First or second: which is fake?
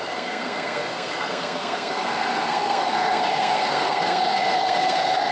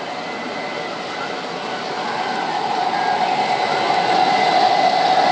first